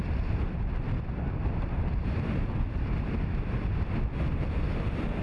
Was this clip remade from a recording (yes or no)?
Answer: no